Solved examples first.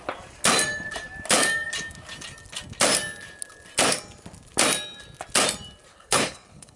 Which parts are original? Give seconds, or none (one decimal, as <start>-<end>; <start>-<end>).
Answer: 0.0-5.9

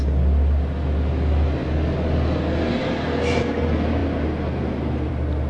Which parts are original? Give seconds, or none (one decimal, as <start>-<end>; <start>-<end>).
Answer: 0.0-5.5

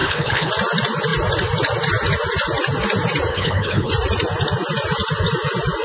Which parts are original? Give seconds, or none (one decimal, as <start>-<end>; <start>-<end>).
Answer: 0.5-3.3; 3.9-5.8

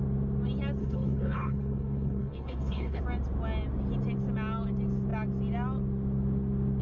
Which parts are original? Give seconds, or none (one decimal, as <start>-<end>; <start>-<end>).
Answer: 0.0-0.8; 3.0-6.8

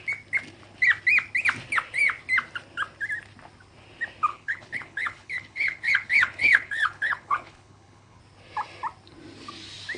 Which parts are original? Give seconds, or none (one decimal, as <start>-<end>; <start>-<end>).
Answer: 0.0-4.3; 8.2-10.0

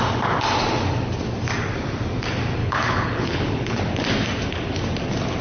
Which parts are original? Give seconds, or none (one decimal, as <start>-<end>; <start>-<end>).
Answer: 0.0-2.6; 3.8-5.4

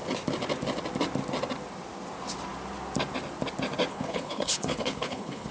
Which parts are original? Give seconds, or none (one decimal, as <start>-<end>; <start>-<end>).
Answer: 0.0-3.9

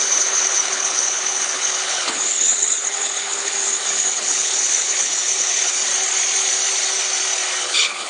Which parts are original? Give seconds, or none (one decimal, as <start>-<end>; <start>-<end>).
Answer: 5.9-7.6